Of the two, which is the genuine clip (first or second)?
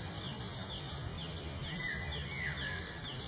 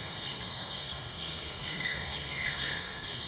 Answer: first